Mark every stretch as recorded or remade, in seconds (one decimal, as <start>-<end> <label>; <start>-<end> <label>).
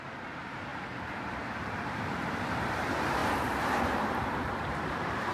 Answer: 0.0-3.2 remade; 3.2-3.9 recorded; 3.9-5.3 remade